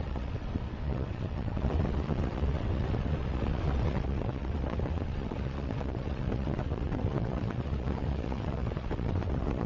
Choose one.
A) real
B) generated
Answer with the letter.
B